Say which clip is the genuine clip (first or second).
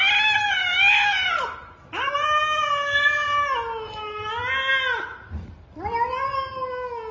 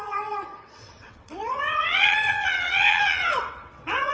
first